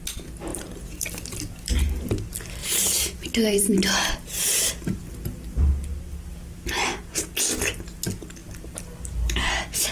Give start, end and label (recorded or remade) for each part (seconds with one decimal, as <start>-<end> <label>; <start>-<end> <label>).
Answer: 0.0-0.5 recorded; 0.5-1.8 remade; 1.8-2.6 recorded; 2.6-5.6 remade; 5.6-8.4 recorded; 8.4-9.5 remade; 9.5-9.9 recorded